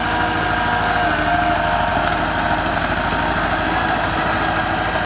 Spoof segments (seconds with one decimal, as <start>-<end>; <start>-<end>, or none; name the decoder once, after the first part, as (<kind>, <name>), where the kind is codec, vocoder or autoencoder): none